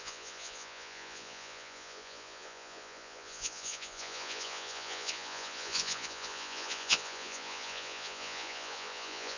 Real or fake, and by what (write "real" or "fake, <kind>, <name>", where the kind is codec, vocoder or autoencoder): fake, vocoder, Vocos